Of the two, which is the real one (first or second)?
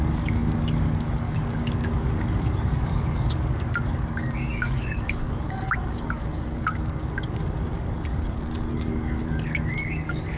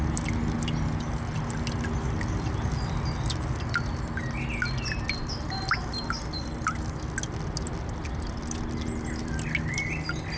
second